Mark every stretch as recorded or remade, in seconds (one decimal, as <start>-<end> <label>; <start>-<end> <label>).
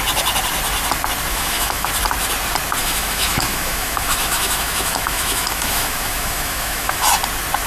0.0-1.3 recorded; 1.3-1.9 remade; 1.9-2.8 recorded; 2.8-7.0 remade; 7.0-7.7 recorded